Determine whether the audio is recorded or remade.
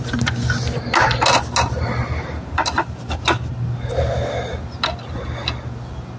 recorded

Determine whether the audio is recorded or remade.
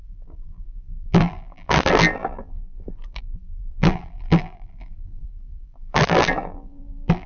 remade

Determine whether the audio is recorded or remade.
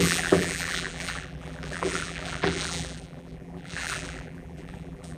remade